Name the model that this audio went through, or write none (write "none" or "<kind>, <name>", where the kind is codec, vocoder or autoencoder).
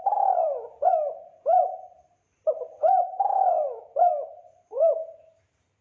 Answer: vocoder, BigVGAN v2